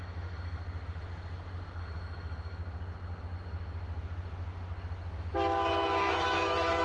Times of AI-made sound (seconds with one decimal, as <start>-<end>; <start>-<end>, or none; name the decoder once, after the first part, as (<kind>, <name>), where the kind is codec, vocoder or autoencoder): 0.0-0.6 (autoencoder, DAC-VAE); 1.8-2.6; 5.2-6.8